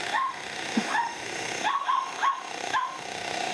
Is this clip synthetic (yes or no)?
yes